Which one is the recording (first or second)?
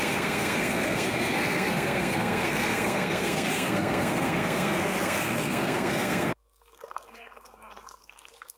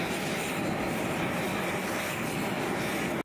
second